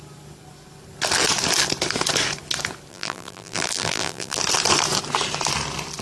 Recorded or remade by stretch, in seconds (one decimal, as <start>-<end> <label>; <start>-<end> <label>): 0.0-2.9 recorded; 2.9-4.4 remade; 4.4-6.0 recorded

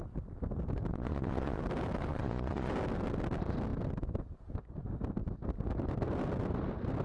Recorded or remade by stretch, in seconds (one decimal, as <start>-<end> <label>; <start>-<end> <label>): 0.0-0.9 recorded; 0.9-1.6 remade; 1.6-2.1 recorded; 2.1-2.7 remade; 2.7-7.0 recorded

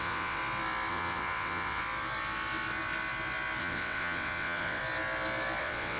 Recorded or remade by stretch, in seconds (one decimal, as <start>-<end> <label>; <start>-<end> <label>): 0.0-0.4 remade; 0.4-0.9 recorded; 0.9-1.8 remade; 1.8-3.6 recorded; 3.6-4.8 remade; 4.8-5.6 recorded; 5.6-6.0 remade